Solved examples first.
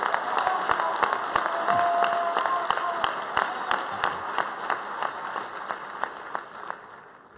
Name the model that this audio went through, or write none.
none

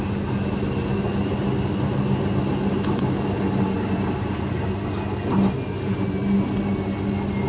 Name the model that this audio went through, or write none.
none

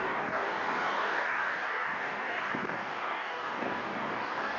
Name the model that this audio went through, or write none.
codec, DAC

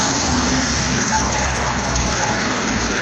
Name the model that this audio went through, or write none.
codec, DAC